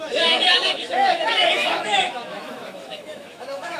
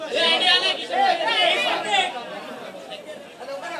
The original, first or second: second